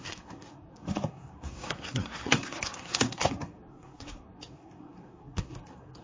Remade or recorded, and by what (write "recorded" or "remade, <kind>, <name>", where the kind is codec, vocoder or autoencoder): remade, codec, SNAC